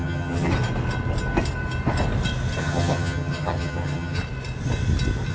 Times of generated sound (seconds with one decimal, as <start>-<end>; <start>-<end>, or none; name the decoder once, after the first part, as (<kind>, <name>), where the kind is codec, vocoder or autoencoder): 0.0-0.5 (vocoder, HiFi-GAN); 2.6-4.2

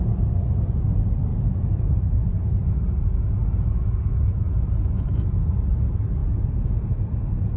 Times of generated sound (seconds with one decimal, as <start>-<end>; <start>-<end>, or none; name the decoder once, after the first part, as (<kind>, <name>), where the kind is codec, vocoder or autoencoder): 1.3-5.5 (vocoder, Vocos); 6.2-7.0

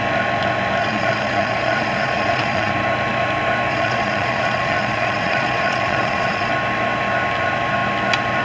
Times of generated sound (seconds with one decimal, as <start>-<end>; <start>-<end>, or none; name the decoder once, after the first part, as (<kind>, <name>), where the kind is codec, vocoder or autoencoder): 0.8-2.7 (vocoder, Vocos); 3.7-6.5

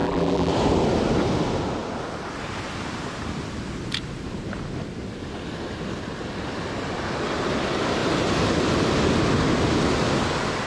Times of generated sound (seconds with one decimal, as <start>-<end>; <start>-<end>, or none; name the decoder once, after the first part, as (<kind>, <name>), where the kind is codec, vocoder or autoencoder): 0.0-0.5 (vocoder, BigVGAN v2)

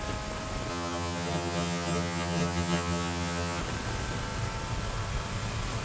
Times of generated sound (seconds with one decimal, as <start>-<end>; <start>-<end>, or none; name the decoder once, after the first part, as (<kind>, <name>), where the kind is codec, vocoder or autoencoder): 0.7-3.6 (vocoder, HiFi-GAN)

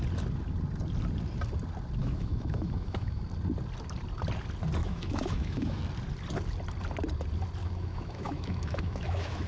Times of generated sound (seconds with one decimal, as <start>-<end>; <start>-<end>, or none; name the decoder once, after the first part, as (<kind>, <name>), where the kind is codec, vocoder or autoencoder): 2.0-3.2 (autoencoder, DAC-VAE); 4.8-5.8; 7.6-9.5